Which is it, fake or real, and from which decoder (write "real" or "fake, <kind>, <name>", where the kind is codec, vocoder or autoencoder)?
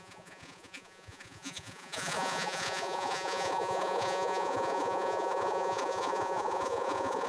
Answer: fake, vocoder, Vocos